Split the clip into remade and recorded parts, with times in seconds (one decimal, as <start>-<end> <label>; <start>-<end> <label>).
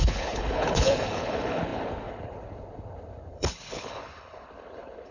0.0-5.1 remade